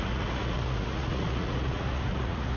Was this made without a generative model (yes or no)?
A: no